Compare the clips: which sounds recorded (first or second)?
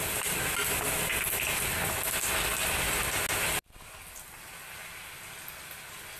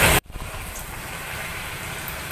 first